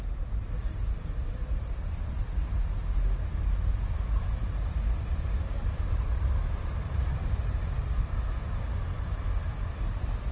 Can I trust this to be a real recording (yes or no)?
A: no